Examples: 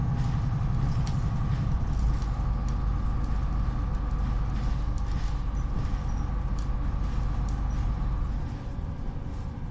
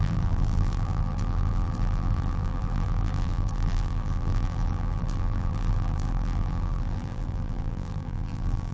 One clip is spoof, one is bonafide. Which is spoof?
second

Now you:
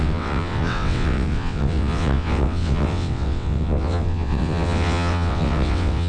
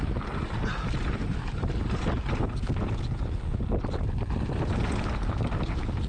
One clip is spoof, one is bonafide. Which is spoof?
first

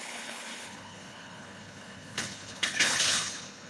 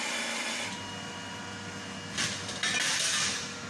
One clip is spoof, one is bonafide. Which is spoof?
first